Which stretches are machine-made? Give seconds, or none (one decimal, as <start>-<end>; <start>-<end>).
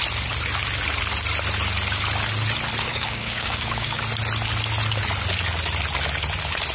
2.9-4.0